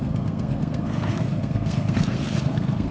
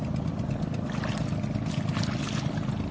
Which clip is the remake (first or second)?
first